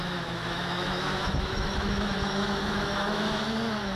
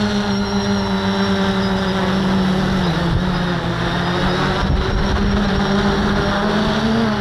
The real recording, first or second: second